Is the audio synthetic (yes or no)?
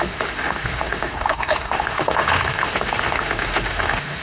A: yes